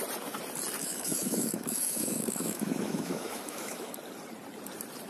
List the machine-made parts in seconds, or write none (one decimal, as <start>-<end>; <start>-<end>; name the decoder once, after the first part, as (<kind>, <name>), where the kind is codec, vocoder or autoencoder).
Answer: 0.8-3.9 (autoencoder, DAC-VAE)